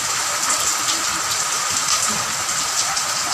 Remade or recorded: recorded